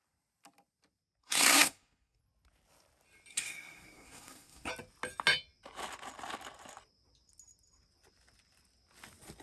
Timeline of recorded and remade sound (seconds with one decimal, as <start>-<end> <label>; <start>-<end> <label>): 0.0-1.2 recorded; 1.2-2.2 remade; 2.2-3.3 recorded; 3.3-4.7 remade; 4.7-9.4 recorded